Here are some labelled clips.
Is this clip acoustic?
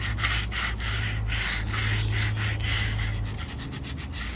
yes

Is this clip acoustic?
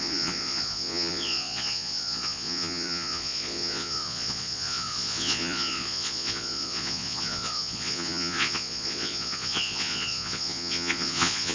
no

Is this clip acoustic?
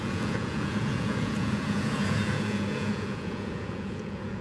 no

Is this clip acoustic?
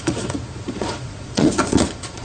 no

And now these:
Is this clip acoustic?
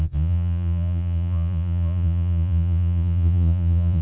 no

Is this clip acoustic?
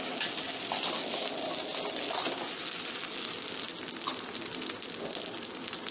yes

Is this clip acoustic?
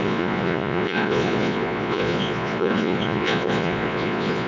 no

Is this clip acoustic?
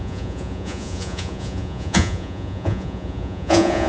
no